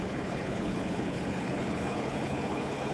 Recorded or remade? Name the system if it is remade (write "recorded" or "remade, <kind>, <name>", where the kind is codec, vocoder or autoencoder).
remade, codec, HILCodec